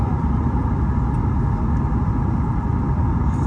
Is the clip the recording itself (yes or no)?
yes